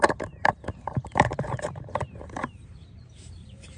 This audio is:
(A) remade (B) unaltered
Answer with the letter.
A